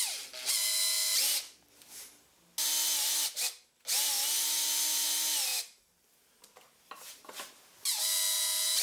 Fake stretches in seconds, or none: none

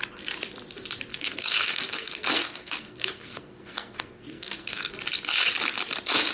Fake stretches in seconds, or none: 1.1-4.9 (codec, SNAC)

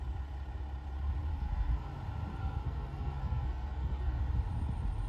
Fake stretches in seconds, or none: 1.3-1.9 (codec, SNAC); 2.3-4.2

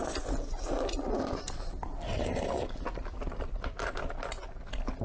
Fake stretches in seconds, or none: none

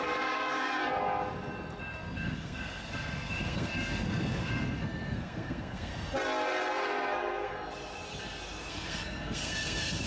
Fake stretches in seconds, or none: 0.0-0.8 (codec, SNAC); 1.8-5.9; 6.7-7.5; 8.7-10.1

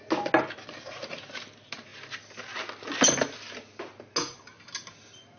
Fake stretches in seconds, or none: none